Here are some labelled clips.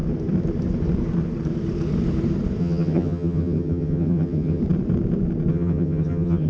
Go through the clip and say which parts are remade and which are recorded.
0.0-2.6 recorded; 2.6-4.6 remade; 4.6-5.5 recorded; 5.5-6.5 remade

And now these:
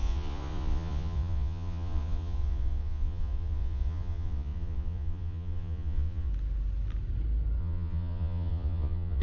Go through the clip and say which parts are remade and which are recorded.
0.0-6.3 remade; 6.3-7.6 recorded; 7.6-9.2 remade

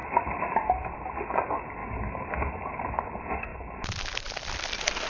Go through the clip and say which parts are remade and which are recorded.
0.0-0.6 remade; 0.6-5.1 recorded